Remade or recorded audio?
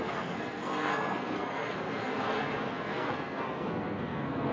remade